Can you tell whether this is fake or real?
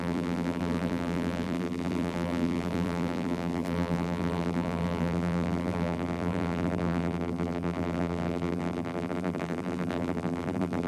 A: fake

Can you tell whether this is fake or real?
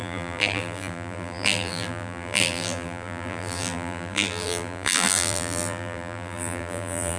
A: fake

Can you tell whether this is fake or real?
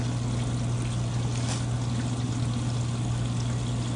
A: real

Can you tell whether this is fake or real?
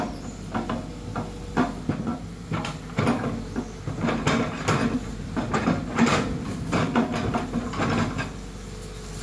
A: real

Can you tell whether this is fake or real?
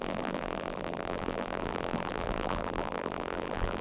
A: fake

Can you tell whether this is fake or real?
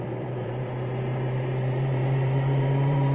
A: fake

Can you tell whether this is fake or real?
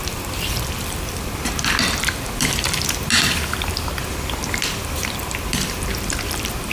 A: fake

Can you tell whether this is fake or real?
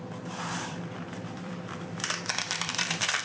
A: fake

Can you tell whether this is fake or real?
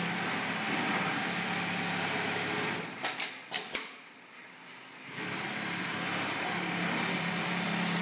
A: fake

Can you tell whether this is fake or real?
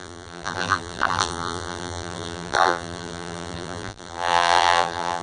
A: fake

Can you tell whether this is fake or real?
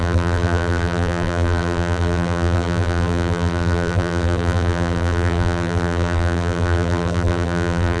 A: fake